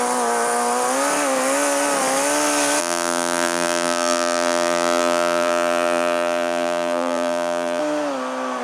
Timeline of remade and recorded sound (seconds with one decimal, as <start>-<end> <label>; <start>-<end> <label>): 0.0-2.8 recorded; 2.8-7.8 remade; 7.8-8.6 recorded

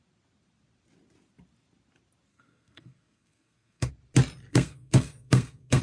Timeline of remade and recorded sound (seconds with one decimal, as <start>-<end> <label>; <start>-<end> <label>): 0.0-2.3 recorded; 2.3-3.9 remade; 3.9-4.5 recorded; 4.5-5.8 remade

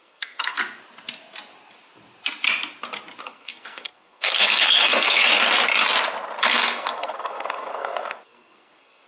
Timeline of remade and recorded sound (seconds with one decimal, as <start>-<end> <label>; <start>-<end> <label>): 0.0-0.6 remade; 0.6-3.2 recorded; 3.2-5.3 remade; 5.3-6.4 recorded; 6.4-9.1 remade